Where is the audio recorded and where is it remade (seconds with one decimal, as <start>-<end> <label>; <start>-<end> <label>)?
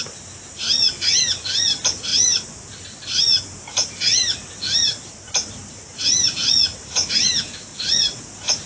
0.0-6.4 recorded; 6.4-7.2 remade; 7.2-7.7 recorded; 7.7-8.2 remade; 8.2-8.7 recorded